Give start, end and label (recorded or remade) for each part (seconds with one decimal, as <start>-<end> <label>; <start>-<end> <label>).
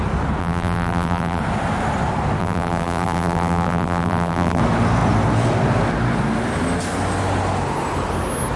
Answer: 0.0-0.4 recorded; 0.4-1.4 remade; 1.4-2.4 recorded; 2.4-4.6 remade; 4.6-8.6 recorded